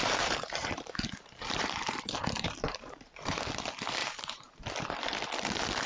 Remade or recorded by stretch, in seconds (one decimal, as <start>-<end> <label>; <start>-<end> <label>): 0.0-3.5 remade; 3.5-4.0 recorded; 4.0-4.6 remade; 4.6-5.9 recorded